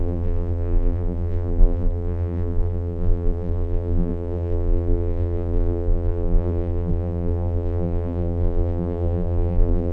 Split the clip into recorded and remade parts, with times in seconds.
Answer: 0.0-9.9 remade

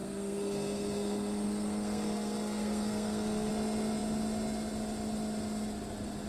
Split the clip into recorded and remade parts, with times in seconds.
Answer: 0.0-3.5 remade; 3.5-6.3 recorded

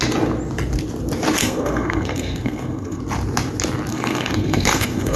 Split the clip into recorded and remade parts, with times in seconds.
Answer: 0.0-1.4 recorded; 1.4-3.0 remade; 3.0-3.9 recorded; 3.9-5.2 remade

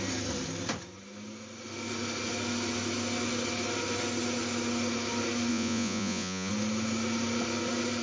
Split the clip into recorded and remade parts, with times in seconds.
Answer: 0.0-5.5 recorded; 5.5-6.5 remade; 6.5-8.0 recorded

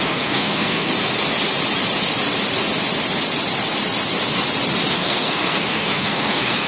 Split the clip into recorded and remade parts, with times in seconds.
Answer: 0.0-0.9 remade; 0.9-4.9 recorded; 4.9-6.7 remade